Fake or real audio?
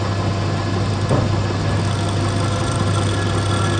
real